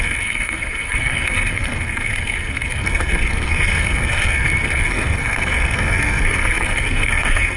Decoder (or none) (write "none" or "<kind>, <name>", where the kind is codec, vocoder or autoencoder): codec, SNAC